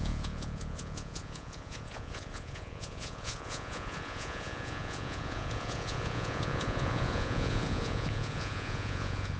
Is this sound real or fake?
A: fake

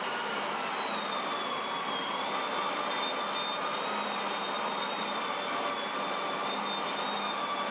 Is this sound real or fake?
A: real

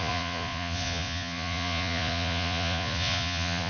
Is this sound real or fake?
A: fake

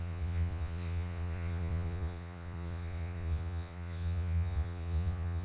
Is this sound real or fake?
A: fake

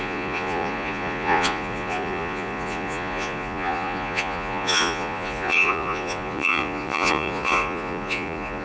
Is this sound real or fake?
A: fake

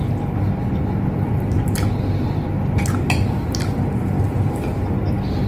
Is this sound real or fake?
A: real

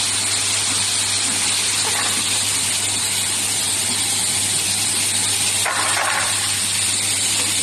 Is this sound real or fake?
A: real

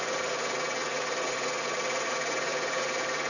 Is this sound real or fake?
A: fake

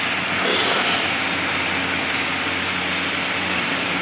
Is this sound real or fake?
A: real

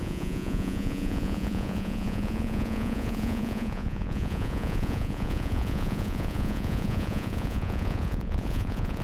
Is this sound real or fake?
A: fake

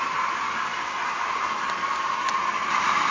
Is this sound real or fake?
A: real